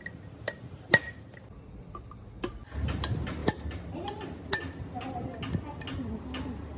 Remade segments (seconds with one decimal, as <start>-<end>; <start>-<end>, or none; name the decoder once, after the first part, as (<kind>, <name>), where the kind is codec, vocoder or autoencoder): none